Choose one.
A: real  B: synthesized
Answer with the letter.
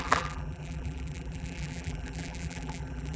B